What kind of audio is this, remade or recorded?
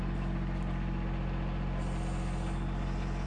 recorded